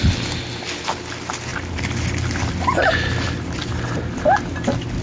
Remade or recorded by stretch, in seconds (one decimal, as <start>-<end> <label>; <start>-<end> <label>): 0.0-5.0 recorded